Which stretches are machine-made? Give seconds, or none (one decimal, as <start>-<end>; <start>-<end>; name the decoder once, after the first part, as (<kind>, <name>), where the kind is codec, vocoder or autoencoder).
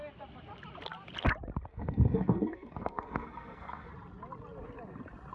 1.7-3.9 (codec, SNAC)